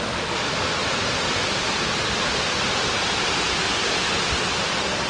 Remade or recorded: recorded